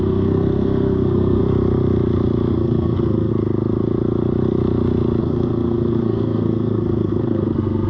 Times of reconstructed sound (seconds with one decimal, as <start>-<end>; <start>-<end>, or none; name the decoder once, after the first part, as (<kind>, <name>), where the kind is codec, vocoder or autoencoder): 0.0-1.4 (codec, SNAC); 2.5-3.3; 5.2-7.9